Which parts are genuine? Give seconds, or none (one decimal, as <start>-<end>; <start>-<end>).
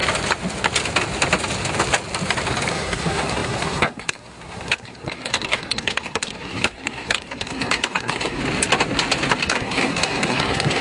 0.0-2.7; 8.4-9.4